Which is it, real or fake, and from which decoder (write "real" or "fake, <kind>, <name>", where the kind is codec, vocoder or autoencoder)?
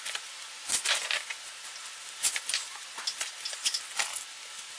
real